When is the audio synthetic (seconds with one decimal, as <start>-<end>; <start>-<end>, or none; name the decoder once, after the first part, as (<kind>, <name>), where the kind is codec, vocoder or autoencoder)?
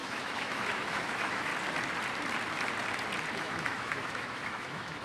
0.0-1.5 (autoencoder, DAC-VAE); 3.4-5.0